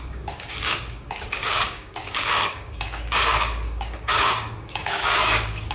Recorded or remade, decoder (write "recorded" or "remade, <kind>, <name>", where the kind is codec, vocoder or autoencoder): remade, codec, DAC